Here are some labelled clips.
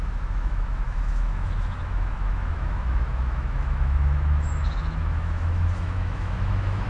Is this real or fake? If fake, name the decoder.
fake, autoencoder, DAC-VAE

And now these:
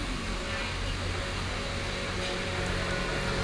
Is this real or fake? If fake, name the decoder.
real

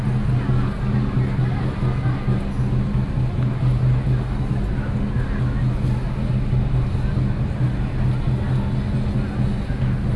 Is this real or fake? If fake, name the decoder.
real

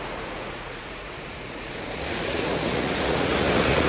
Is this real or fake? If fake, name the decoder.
fake, vocoder, Vocos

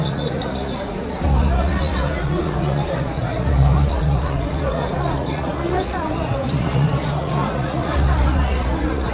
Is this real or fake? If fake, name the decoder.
fake, vocoder, Vocos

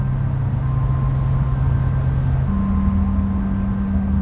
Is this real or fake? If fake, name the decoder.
real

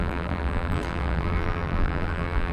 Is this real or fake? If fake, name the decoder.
fake, vocoder, BigVGAN v2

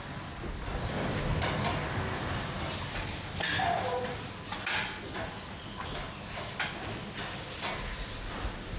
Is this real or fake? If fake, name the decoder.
real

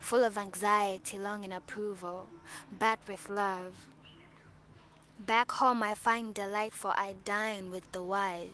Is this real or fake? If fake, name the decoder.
fake, autoencoder, DAC-VAE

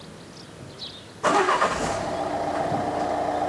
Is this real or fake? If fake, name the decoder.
real